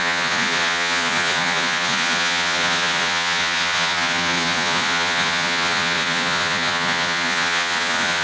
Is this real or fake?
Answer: fake